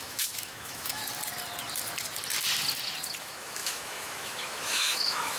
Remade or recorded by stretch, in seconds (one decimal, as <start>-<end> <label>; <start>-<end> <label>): 0.0-1.0 remade; 1.0-3.2 recorded; 3.2-5.4 remade

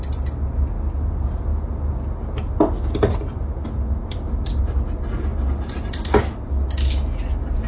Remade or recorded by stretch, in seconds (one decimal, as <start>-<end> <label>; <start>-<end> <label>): 0.0-7.7 recorded

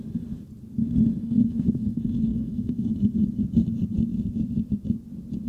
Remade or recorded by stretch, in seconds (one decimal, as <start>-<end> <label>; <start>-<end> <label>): 0.0-1.2 recorded; 1.2-2.9 remade; 2.9-5.5 recorded

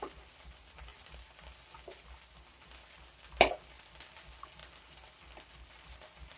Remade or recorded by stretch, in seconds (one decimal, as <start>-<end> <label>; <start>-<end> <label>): 0.0-6.4 recorded